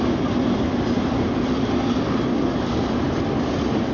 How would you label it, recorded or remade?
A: recorded